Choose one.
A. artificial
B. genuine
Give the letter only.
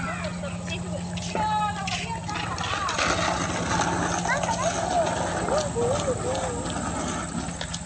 B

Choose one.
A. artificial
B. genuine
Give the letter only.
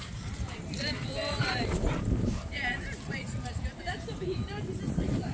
A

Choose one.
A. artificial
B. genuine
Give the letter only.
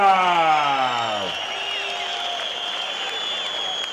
B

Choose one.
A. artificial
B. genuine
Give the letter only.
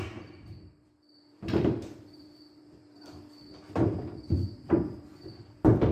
A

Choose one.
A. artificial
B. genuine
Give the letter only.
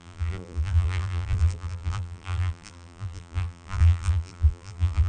A